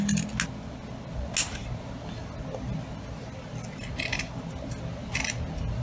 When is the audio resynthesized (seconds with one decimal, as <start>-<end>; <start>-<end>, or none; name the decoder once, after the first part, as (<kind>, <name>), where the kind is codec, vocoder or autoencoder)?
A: none